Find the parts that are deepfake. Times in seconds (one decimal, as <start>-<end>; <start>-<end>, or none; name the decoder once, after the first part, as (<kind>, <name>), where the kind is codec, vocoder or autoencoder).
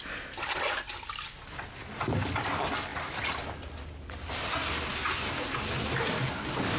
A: none